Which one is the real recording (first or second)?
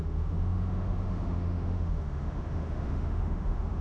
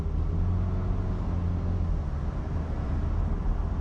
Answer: second